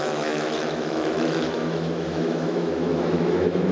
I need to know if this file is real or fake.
fake